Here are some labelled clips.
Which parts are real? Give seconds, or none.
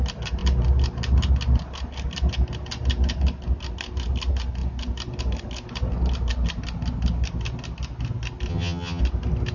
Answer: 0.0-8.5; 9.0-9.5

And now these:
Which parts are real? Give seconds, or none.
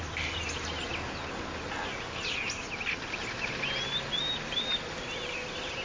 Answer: 0.0-5.8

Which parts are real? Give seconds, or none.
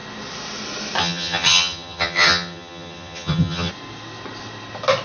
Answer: 0.0-1.0; 3.7-5.0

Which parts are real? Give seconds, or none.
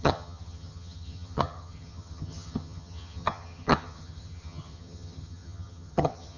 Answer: none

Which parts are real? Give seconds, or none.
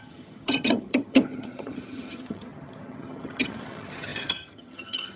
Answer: none